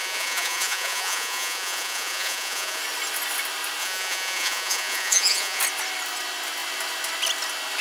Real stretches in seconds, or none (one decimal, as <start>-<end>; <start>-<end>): 2.8-3.8; 5.6-7.8